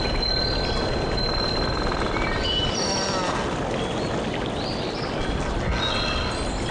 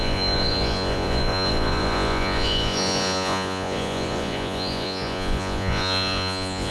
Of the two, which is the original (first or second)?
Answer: first